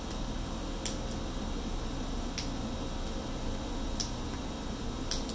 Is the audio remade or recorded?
recorded